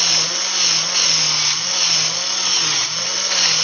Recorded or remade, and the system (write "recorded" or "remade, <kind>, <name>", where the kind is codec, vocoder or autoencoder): recorded